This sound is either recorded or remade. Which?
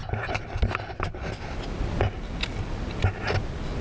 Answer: recorded